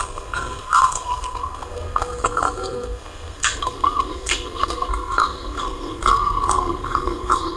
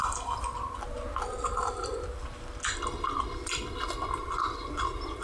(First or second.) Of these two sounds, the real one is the second